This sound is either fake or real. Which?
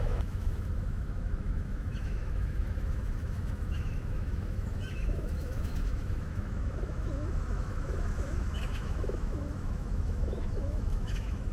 fake